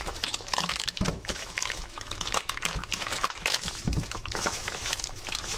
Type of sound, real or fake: fake